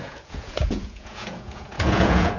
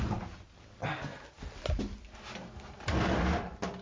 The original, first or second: second